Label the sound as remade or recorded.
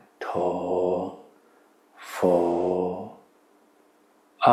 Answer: recorded